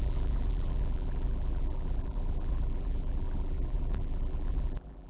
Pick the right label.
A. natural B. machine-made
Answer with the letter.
B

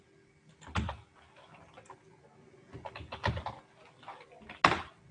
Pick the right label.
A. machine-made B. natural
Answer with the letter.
B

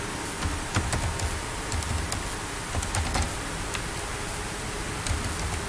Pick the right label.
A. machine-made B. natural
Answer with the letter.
B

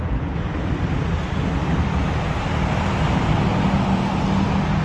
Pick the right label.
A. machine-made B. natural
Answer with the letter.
A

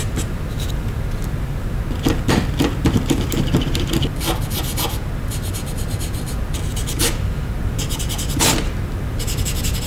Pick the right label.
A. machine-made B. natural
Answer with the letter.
B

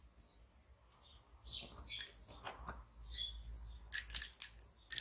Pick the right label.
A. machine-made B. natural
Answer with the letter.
B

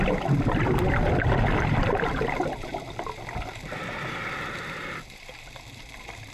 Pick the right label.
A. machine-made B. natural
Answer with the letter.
A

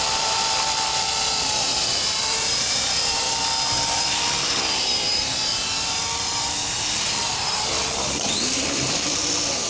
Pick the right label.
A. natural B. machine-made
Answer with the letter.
B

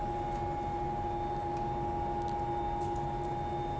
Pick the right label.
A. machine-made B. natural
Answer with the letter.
B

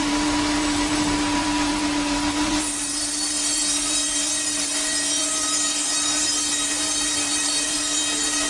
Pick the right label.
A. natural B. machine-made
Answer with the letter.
B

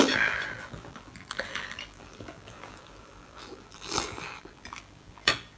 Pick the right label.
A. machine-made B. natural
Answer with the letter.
A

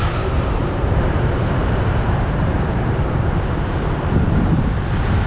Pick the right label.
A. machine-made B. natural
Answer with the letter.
A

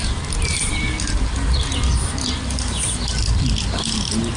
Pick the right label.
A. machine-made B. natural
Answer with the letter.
B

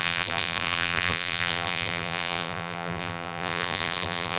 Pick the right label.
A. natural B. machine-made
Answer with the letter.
B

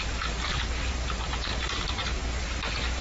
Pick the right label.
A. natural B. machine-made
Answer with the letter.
B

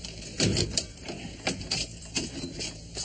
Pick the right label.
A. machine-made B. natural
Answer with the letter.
A